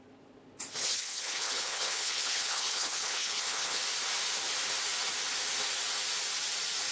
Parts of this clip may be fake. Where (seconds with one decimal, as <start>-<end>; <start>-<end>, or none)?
0.8-3.8